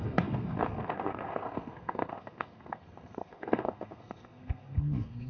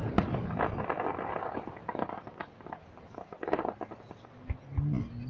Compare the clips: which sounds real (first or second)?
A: second